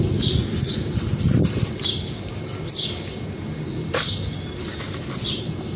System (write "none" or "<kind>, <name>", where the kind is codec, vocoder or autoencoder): none